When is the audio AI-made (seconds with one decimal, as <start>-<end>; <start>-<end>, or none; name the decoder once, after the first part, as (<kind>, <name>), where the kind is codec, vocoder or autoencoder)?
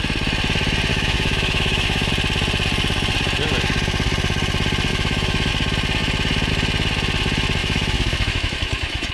0.9-2.1 (autoencoder, DAC-VAE); 4.9-5.5; 7.6-9.1